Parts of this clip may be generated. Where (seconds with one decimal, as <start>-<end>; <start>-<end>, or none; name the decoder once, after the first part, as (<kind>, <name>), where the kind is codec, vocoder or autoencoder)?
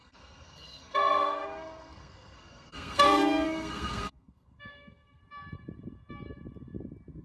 0.0-5.2 (codec, SNAC)